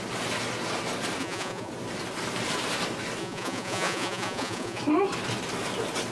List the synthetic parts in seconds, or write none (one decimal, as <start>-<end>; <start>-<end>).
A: 1.2-1.7; 3.2-4.8